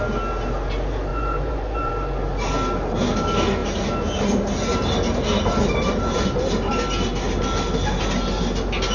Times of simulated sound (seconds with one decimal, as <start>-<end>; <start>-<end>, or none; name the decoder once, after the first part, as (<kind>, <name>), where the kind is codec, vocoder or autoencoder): 1.1-1.9 (vocoder, Vocos)